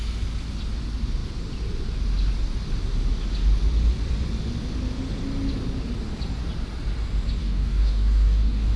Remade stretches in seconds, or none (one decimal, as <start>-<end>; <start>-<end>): 7.4-8.8